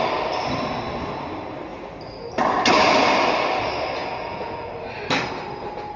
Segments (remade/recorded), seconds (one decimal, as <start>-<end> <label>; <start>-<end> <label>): 0.0-4.0 recorded; 4.0-4.7 remade; 4.7-6.0 recorded